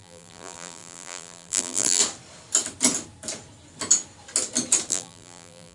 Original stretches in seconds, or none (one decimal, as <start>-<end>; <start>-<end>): 2.0-4.9